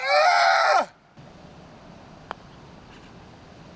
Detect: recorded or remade recorded